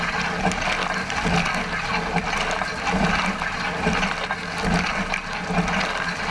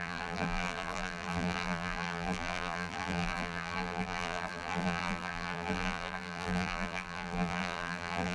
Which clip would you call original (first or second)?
first